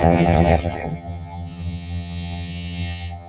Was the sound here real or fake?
fake